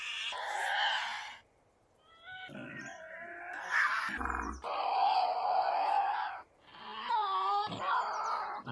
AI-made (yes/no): no